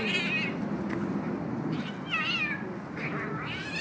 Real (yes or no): yes